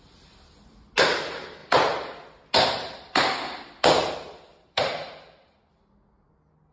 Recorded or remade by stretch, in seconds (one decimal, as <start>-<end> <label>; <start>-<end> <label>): 0.0-4.5 recorded; 4.5-5.6 remade; 5.6-6.7 recorded